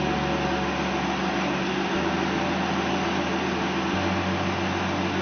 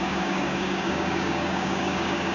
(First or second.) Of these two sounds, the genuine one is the first